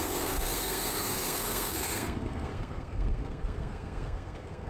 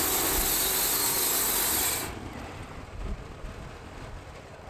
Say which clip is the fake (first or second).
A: first